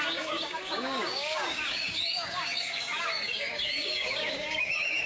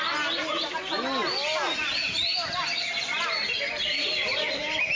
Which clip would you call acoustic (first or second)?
second